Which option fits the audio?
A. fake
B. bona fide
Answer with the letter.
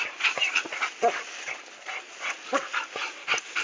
B